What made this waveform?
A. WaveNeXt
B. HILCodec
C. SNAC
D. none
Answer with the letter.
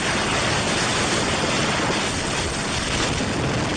D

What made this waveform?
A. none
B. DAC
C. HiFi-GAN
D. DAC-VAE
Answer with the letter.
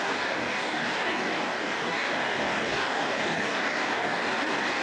B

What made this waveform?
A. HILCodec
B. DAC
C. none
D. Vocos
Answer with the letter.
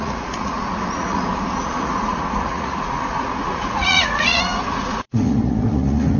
D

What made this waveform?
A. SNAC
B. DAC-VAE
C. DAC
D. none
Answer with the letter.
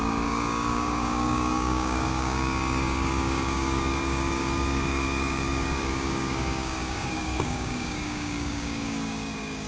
C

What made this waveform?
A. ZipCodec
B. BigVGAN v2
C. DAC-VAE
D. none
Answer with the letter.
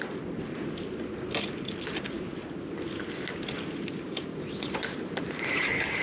D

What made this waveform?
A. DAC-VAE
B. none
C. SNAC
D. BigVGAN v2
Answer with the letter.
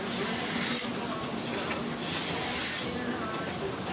B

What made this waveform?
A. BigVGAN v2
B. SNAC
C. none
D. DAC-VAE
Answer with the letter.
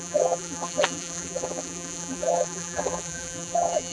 A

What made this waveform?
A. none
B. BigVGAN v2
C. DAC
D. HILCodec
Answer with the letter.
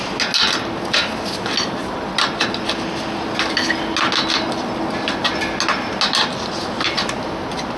A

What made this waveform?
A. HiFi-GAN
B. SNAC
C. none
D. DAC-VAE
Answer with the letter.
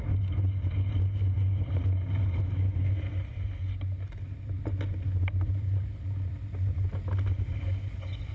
C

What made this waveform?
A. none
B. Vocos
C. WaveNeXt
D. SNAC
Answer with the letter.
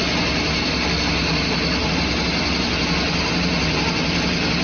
A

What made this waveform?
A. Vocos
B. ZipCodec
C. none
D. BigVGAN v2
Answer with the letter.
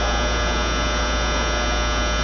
C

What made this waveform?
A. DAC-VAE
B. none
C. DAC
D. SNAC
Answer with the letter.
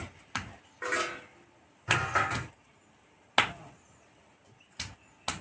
B